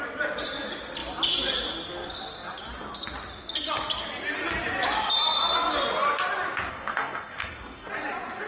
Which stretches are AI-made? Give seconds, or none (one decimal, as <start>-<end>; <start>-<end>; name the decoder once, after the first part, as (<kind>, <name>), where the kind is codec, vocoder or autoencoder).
6.7-7.9 (codec, SNAC)